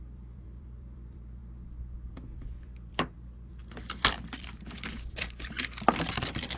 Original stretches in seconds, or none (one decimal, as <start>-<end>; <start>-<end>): 1.4-2.1; 3.6-4.4